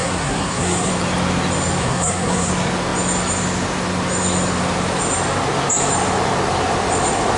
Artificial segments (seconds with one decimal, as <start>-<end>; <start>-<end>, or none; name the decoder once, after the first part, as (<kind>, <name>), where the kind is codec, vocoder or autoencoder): 0.0-0.9 (codec, SNAC); 1.8-2.5